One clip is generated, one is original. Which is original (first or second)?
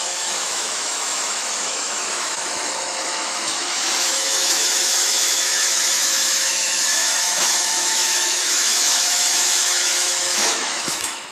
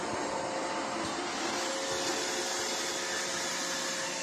second